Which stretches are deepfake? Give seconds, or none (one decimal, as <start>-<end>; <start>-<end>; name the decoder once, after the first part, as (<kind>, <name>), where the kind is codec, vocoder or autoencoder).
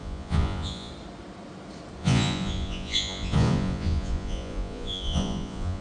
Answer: 0.0-0.9 (vocoder, Vocos); 2.0-5.8